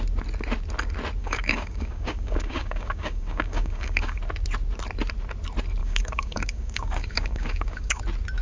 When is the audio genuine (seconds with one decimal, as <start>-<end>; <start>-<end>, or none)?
0.0-1.2; 4.2-5.8; 8.0-8.4